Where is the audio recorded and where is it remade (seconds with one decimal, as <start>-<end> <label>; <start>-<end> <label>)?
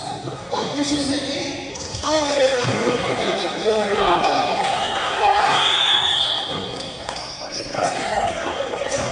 0.0-1.1 remade; 1.1-1.7 recorded; 1.7-9.1 remade